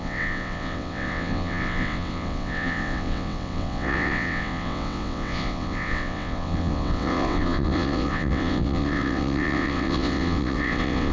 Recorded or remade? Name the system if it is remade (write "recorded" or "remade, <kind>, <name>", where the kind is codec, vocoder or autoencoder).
remade, vocoder, WaveNeXt